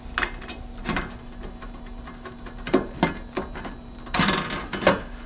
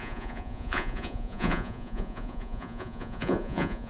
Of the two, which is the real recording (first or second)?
first